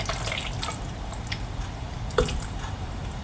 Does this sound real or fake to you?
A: fake